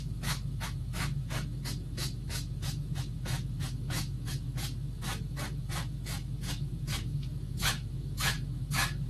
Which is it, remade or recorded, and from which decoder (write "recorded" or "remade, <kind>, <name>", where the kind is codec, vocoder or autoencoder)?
remade, autoencoder, DAC-VAE